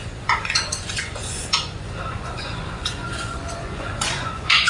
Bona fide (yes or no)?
no